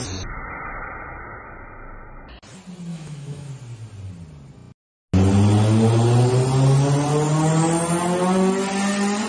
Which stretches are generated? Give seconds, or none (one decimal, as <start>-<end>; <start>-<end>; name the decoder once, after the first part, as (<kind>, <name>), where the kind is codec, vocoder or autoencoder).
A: 2.9-3.5 (autoencoder, DAC-VAE)